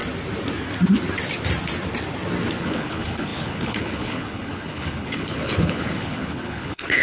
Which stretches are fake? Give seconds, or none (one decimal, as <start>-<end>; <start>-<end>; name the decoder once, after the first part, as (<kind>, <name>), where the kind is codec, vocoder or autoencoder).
2.6-7.0 (codec, HILCodec)